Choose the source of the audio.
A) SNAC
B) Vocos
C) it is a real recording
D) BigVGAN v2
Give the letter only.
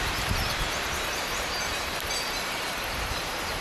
D